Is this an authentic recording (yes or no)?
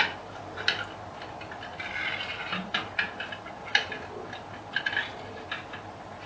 yes